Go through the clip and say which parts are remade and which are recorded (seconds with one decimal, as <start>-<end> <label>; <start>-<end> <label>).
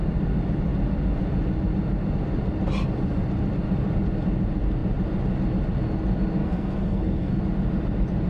0.0-6.4 recorded; 6.4-7.4 remade; 7.4-8.3 recorded